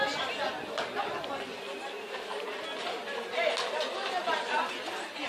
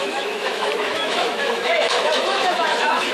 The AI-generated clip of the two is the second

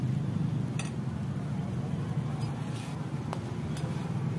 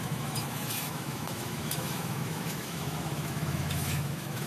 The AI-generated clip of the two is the second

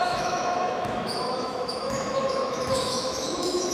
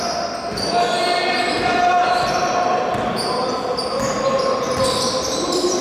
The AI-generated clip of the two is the first